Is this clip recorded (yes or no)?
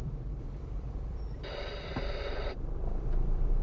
no